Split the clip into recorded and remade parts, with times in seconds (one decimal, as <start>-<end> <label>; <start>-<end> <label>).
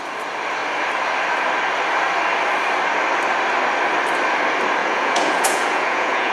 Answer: 0.0-4.8 recorded; 4.8-6.3 remade